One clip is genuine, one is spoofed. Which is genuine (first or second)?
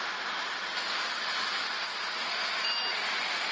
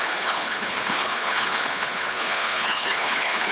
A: first